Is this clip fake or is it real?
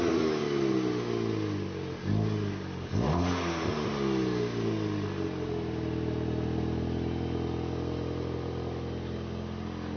real